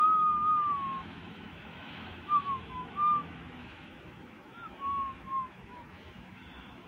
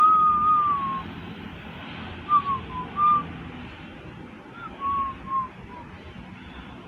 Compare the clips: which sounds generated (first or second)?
first